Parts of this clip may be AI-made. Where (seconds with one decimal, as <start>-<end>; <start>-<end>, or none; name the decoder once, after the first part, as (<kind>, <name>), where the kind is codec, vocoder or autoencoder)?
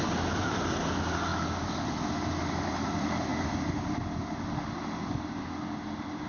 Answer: none